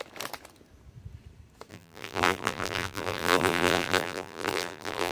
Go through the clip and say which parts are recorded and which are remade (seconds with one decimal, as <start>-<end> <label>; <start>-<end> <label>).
0.0-1.7 recorded; 1.7-5.1 remade